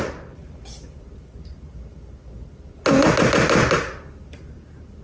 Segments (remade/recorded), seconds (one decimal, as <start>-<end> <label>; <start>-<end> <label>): 0.0-5.0 recorded